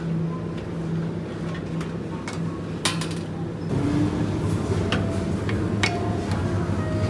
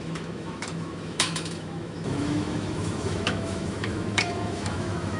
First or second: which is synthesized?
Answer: second